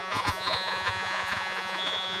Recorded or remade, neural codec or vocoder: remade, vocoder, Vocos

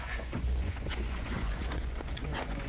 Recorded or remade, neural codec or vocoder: remade, vocoder, Vocos